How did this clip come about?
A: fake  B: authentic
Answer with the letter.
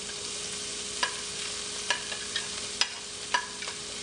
B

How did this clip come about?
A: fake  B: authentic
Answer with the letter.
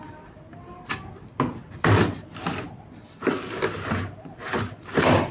B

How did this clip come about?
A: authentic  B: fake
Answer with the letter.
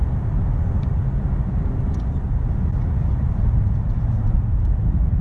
A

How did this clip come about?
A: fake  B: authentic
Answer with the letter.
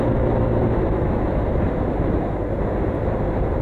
B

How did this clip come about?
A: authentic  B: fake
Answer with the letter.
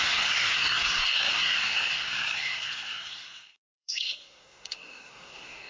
B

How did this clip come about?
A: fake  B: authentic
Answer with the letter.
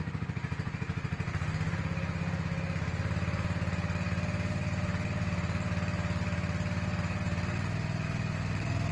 B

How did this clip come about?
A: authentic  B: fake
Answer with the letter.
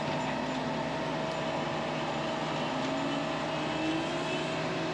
A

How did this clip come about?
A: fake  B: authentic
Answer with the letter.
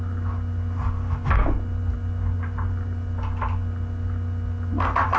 B